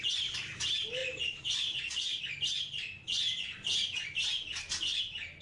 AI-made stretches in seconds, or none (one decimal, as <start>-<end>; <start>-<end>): 1.0-2.2